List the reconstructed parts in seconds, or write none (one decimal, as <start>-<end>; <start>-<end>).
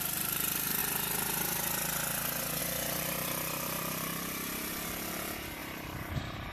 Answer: 0.0-0.8; 2.6-6.5